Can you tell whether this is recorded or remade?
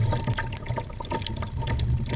recorded